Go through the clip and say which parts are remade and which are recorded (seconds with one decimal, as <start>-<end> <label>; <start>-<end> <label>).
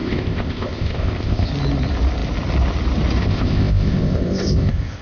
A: 0.0-1.5 remade; 1.5-3.2 recorded; 3.2-5.0 remade